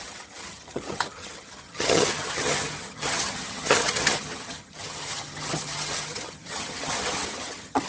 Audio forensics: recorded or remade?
remade